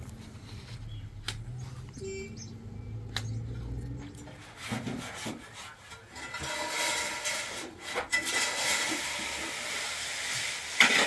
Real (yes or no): yes